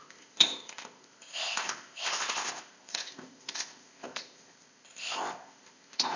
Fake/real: fake